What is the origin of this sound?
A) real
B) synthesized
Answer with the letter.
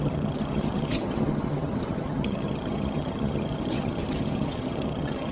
B